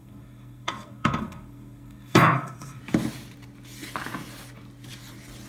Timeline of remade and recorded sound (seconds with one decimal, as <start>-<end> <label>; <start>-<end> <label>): 0.0-2.8 remade; 2.8-5.5 recorded